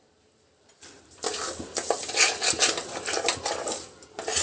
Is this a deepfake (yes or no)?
no